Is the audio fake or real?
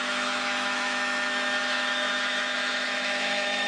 fake